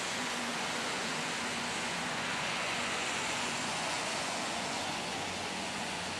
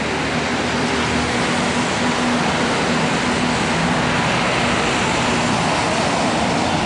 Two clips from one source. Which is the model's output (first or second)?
first